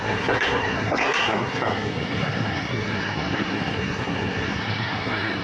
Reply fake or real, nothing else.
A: fake